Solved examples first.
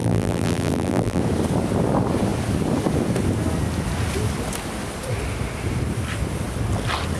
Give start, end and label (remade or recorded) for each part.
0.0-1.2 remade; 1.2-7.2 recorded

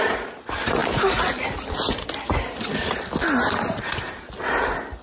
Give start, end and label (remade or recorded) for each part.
0.0-5.0 recorded